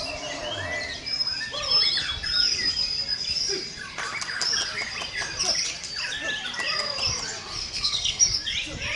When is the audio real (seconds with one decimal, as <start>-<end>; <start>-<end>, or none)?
0.0-7.6; 8.2-9.0